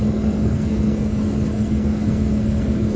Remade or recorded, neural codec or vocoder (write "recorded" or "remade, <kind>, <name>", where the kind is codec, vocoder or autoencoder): remade, codec, SNAC